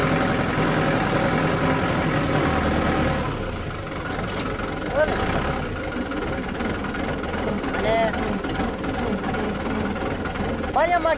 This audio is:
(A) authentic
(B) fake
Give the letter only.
A